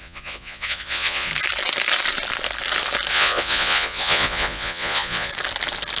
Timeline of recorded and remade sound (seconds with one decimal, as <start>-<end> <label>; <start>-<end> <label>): 0.0-1.3 remade; 1.3-3.1 recorded; 3.1-5.3 remade; 5.3-6.0 recorded